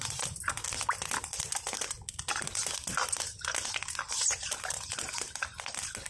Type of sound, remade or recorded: recorded